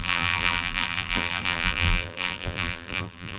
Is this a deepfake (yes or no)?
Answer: yes